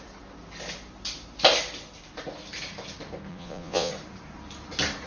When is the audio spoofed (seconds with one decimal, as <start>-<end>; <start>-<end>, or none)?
3.3-3.9